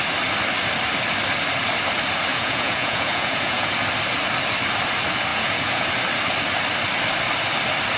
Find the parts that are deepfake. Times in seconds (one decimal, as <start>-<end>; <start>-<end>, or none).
2.3-3.7; 5.3-5.9